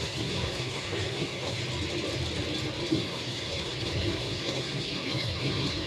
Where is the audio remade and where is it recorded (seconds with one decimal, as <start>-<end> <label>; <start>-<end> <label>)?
0.0-1.6 remade; 1.6-2.9 recorded; 2.9-5.9 remade